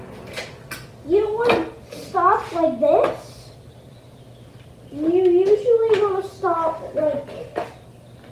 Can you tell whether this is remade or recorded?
recorded